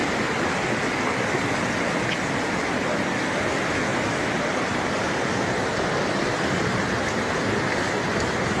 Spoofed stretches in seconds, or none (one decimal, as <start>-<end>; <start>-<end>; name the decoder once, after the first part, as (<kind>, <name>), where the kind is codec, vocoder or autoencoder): 3.9-6.3 (vocoder, BigVGAN v2)